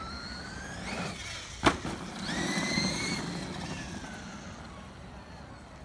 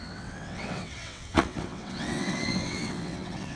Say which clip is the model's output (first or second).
second